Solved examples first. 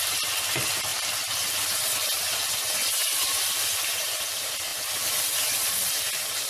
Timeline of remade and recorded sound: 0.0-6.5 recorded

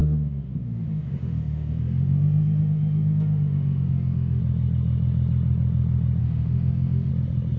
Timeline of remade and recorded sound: 0.0-4.4 remade; 4.4-6.2 recorded; 6.2-7.1 remade; 7.1-7.6 recorded